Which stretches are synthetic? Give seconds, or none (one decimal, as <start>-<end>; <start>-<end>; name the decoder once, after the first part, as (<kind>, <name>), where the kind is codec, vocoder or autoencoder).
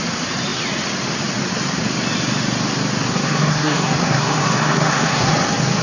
3.1-5.3 (codec, SNAC)